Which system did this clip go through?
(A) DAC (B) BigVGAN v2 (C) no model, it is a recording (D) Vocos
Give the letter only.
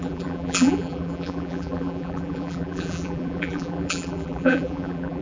B